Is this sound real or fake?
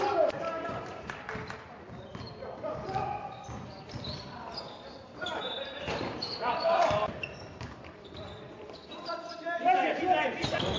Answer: real